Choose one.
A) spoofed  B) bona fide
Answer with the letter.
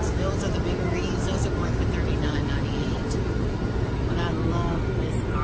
B